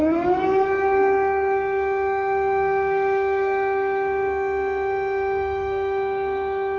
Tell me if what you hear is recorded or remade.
remade